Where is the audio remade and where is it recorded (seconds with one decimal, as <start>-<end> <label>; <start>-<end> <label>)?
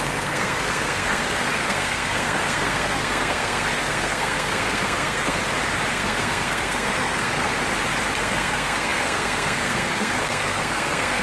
0.0-5.4 remade; 5.4-5.9 recorded; 5.9-7.5 remade; 7.5-8.2 recorded; 8.2-11.2 remade